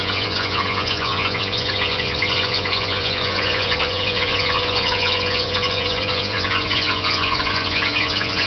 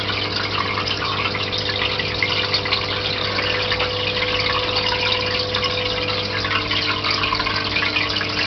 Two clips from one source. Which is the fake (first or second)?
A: first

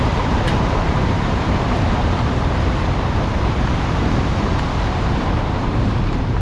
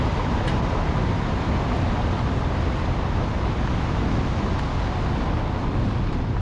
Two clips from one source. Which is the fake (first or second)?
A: first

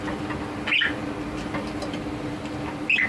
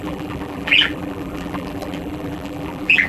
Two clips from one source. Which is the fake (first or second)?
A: second